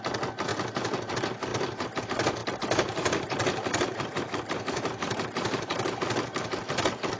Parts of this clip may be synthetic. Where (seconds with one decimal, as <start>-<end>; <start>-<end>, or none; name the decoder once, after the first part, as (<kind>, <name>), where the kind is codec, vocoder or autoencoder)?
2.4-6.0 (vocoder, BigVGAN v2)